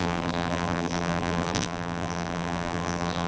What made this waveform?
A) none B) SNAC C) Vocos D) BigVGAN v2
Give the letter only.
D